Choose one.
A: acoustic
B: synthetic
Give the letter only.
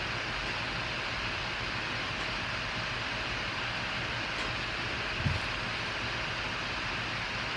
A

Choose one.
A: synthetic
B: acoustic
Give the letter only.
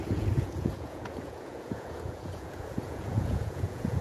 A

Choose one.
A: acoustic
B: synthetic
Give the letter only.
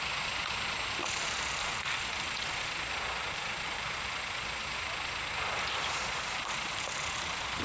A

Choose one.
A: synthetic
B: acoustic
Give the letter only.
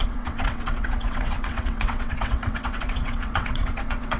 A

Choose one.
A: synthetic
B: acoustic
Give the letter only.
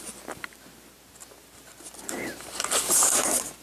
B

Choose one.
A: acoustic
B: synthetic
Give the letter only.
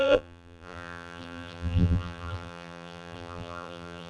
B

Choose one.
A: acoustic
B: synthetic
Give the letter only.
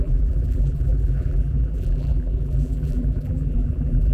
B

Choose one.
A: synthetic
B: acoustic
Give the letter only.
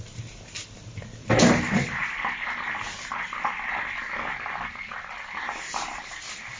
B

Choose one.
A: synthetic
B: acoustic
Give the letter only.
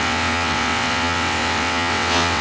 A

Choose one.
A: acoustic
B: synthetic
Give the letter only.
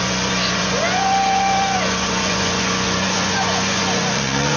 B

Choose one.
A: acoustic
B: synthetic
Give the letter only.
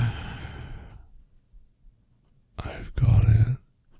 A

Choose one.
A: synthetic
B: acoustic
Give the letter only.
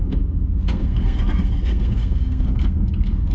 A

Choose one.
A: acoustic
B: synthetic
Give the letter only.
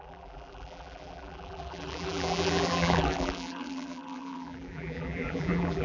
B